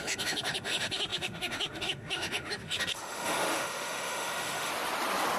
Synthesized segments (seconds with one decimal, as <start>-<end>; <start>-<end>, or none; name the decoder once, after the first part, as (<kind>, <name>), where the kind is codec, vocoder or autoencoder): 0.0-4.7 (autoencoder, DAC-VAE)